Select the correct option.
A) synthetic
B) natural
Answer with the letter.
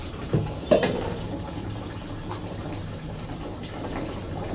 B